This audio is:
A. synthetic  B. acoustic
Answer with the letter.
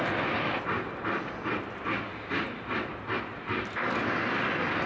B